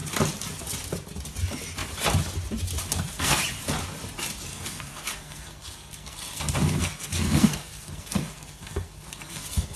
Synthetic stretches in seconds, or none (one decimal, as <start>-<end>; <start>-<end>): 2.9-3.4; 4.5-9.8